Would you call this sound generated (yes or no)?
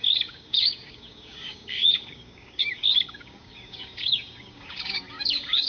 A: yes